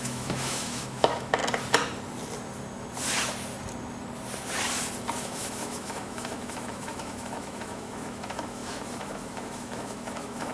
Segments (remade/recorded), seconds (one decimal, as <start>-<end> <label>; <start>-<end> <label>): 0.0-1.4 remade; 1.4-5.2 recorded; 5.2-10.5 remade